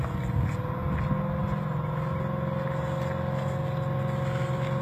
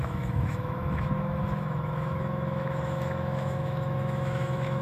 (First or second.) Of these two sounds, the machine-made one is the second